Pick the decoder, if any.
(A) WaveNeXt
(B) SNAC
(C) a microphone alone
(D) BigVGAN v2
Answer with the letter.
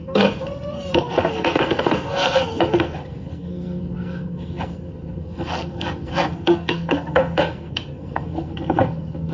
B